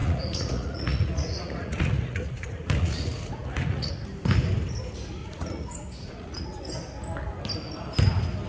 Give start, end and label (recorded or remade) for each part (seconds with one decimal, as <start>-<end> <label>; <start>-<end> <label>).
0.0-3.9 remade; 3.9-5.2 recorded; 5.2-6.7 remade; 6.7-8.5 recorded